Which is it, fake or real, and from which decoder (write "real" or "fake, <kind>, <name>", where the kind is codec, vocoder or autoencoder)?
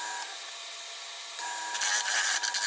real